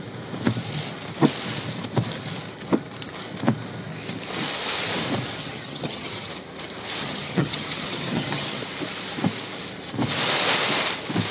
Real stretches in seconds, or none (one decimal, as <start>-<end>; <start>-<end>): 0.0-5.4; 6.3-7.0; 8.6-11.3